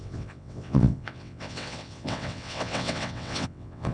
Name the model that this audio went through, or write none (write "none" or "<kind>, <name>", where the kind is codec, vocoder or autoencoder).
vocoder, WaveNeXt